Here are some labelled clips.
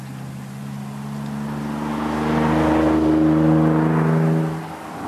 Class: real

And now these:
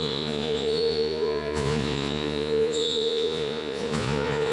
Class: fake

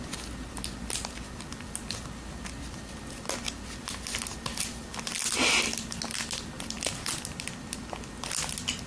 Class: real